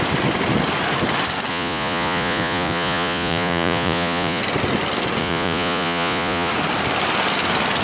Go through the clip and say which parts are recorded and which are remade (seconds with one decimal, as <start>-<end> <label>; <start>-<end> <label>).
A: 0.0-1.5 recorded; 1.5-4.4 remade; 4.4-5.2 recorded; 5.2-6.5 remade; 6.5-7.8 recorded